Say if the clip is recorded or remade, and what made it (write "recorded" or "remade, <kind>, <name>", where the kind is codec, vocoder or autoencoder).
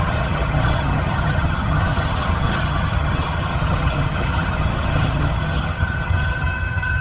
remade, vocoder, HiFi-GAN